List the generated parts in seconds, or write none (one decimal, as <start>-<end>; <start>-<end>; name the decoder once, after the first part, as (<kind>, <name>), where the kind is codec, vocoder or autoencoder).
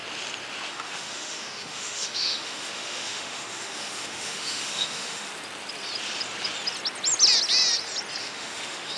0.7-5.3 (autoencoder, DAC-VAE); 8.2-9.0